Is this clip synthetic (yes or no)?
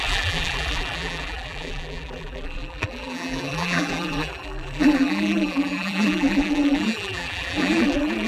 yes